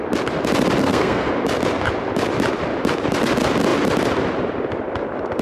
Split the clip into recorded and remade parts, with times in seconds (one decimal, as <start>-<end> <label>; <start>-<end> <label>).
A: 0.0-0.8 recorded; 0.8-1.3 remade; 1.3-5.4 recorded